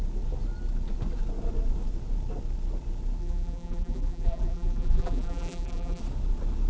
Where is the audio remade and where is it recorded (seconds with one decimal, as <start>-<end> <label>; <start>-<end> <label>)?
0.0-3.2 recorded; 3.2-6.0 remade; 6.0-6.7 recorded